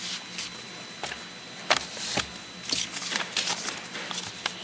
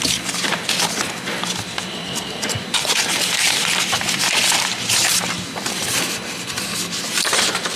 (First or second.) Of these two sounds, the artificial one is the second